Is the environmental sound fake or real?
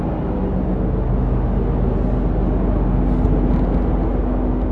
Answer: real